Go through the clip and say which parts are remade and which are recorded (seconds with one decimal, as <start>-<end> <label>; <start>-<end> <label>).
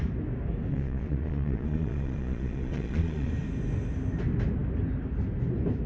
0.0-0.7 recorded; 0.7-3.3 remade; 3.3-5.9 recorded